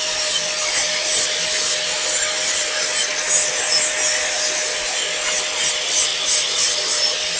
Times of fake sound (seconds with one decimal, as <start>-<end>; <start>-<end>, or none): none